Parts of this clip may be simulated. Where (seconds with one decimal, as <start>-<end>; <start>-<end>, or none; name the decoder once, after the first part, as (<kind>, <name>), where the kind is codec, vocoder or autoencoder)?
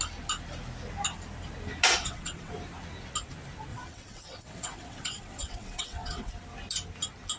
2.0-2.5 (vocoder, WaveNeXt); 3.7-6.3